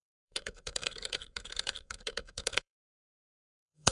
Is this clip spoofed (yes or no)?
yes